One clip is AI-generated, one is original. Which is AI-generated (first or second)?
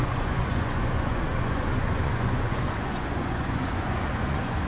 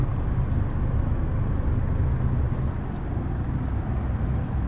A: first